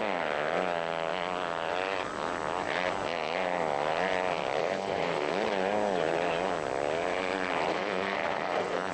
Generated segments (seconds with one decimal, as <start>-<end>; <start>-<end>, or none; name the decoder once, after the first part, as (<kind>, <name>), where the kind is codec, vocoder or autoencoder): 4.6-5.3 (codec, SNAC); 7.7-8.9

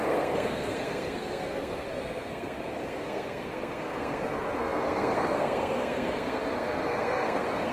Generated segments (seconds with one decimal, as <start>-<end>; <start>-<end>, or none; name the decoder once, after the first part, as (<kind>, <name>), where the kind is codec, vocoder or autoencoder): 0.0-7.7 (codec, SNAC)

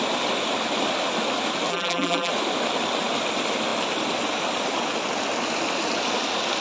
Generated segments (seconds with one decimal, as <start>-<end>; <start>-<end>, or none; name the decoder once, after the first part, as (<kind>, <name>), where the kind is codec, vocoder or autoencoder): 1.7-2.3 (vocoder, BigVGAN v2)

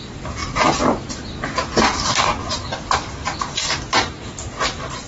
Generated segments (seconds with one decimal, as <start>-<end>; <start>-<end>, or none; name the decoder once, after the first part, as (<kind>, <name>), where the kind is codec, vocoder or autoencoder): none

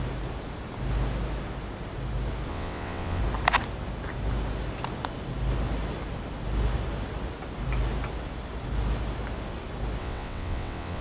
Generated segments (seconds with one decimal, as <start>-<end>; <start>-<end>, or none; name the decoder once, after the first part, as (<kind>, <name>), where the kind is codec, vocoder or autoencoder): 2.5-3.2 (vocoder, WaveNeXt); 10.0-11.0

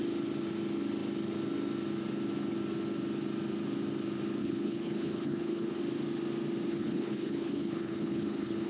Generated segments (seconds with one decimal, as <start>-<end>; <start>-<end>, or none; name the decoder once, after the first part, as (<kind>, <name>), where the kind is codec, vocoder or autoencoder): 4.4-5.8 (codec, HILCodec); 6.7-8.7

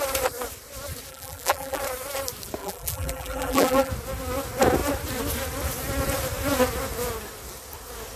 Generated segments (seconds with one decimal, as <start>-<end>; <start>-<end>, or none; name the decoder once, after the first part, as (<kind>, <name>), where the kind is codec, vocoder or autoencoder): 1.1-1.8 (vocoder, BigVGAN v2); 2.6-3.9